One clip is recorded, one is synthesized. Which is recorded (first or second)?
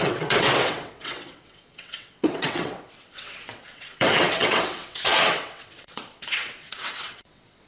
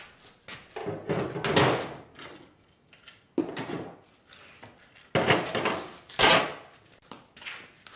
second